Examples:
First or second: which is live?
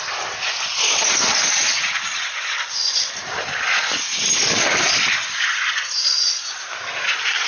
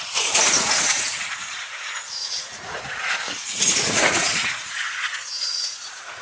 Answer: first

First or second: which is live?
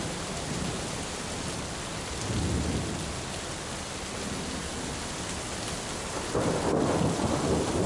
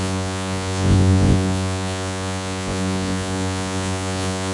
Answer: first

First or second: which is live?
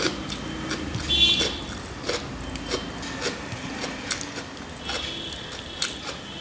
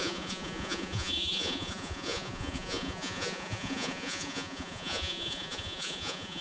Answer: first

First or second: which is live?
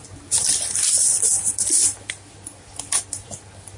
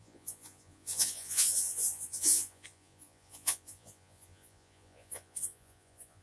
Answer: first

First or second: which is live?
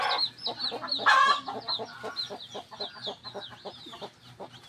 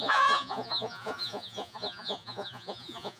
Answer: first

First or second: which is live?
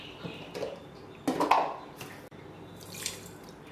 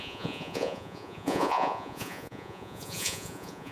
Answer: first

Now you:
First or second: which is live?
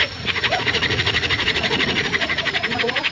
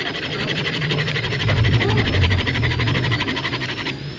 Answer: second